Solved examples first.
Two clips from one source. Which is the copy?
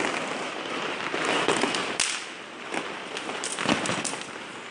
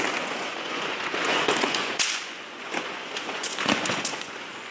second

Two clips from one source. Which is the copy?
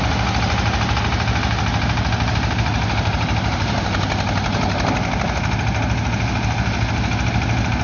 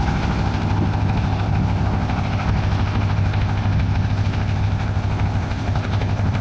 second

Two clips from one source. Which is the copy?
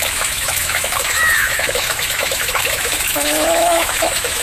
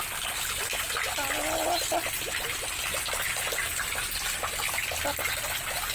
first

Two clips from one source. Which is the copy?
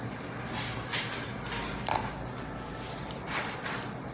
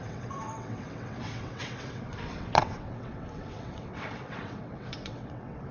second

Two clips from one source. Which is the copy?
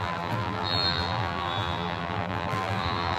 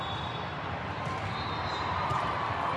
first